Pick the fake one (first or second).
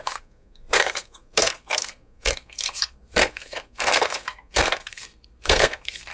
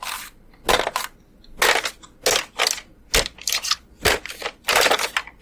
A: first